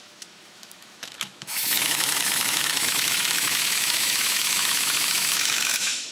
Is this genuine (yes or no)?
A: no